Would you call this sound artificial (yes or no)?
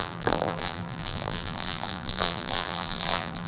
yes